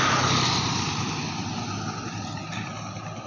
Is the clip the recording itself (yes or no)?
yes